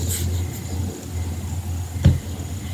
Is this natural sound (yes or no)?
yes